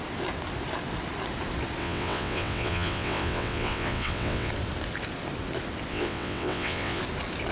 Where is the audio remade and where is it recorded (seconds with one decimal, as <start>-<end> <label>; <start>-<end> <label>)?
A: 0.0-1.8 recorded; 1.8-4.5 remade; 4.5-5.9 recorded; 5.9-7.0 remade; 7.0-7.5 recorded